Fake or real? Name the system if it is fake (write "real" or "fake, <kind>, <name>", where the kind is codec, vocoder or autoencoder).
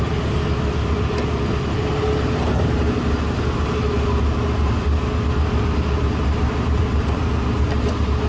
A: real